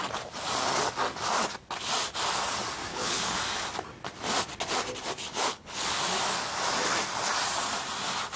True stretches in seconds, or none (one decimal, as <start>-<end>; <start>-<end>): 0.0-2.9; 3.4-5.3; 5.9-8.4